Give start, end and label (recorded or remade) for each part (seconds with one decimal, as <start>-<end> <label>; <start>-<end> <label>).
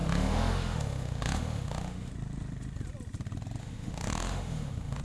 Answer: 0.0-2.1 remade; 2.1-3.6 recorded; 3.6-5.0 remade